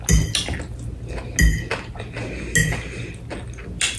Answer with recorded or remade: recorded